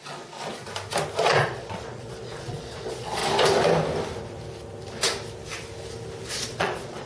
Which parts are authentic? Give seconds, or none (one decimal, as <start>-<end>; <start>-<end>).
0.5-1.2; 3.2-6.3